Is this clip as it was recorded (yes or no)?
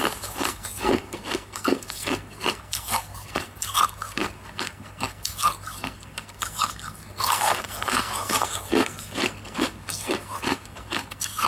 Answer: no